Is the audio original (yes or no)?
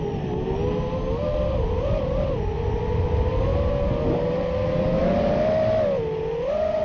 yes